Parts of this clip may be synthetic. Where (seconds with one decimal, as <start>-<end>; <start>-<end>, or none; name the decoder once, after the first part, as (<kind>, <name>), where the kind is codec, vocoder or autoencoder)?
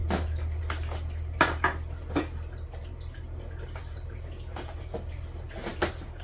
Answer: none